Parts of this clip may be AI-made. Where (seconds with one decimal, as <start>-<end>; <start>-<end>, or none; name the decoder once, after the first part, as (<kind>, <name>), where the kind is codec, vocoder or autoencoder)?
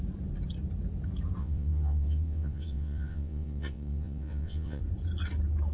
1.4-4.8 (vocoder, WaveNeXt)